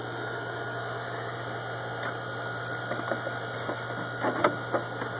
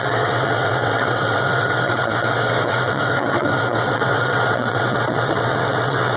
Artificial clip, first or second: second